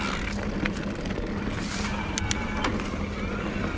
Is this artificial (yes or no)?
no